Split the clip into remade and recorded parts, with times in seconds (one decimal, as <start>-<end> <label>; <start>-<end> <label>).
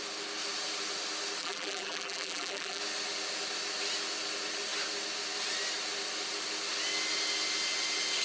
0.0-1.4 recorded; 1.4-2.8 remade; 2.8-8.2 recorded